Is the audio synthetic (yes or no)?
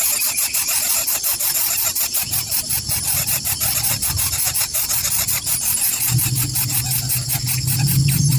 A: no